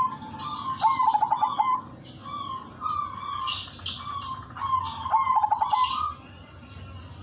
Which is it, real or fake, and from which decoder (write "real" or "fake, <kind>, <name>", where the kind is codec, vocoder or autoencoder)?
real